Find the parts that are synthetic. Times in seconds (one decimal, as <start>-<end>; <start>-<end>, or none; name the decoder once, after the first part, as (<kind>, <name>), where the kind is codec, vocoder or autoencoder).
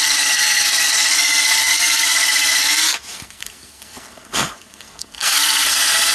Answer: 0.0-6.1 (codec, SNAC)